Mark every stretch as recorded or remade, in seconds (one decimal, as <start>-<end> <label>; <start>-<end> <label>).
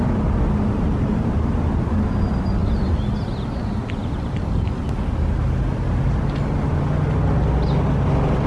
0.0-8.5 recorded